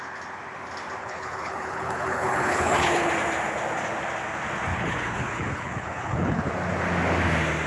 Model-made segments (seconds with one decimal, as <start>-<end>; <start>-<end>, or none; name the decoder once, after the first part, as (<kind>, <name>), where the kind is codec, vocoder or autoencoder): 1.0-3.1 (codec, HILCodec); 4.7-6.5